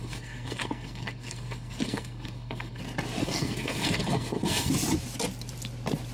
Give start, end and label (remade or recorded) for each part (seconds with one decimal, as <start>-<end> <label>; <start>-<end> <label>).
0.0-2.8 remade; 2.8-3.2 recorded; 3.2-4.7 remade; 4.7-6.1 recorded

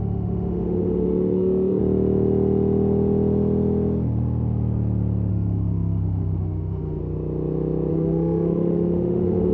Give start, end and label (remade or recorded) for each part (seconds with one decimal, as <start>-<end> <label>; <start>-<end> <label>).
0.0-1.8 remade; 1.8-5.3 recorded; 5.3-7.0 remade; 7.0-7.9 recorded; 7.9-9.5 remade

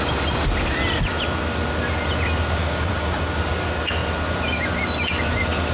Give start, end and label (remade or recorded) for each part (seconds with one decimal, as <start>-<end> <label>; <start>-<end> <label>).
0.0-2.6 recorded; 2.6-3.4 remade; 3.4-5.7 recorded

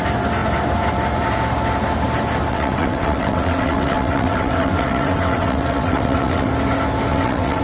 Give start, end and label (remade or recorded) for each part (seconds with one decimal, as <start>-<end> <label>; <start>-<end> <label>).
0.0-2.5 recorded; 2.5-6.5 remade; 6.5-7.1 recorded; 7.1-7.6 remade

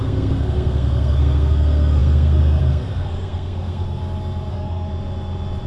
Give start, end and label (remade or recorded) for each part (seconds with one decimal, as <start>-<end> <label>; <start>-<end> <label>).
0.0-4.0 remade; 4.0-4.5 recorded; 4.5-4.9 remade; 4.9-5.7 recorded